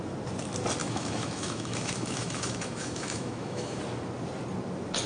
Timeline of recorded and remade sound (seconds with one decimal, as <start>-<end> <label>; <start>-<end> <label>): 0.0-0.8 recorded; 0.8-3.8 remade; 3.8-5.1 recorded